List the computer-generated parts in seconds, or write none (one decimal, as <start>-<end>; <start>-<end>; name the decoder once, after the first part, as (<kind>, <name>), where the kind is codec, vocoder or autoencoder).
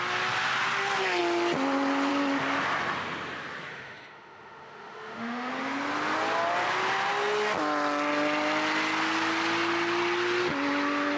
3.7-5.5 (autoencoder, DAC-VAE)